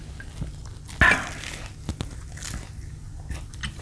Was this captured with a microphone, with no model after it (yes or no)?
yes